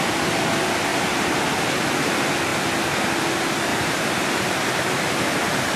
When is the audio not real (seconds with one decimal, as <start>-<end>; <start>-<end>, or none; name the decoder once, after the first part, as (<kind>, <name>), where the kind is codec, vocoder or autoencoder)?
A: 0.9-1.4 (vocoder, BigVGAN v2); 3.7-4.4